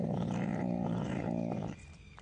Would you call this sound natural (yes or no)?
no